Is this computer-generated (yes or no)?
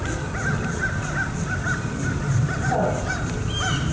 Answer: no